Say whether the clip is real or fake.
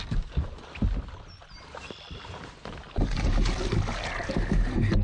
real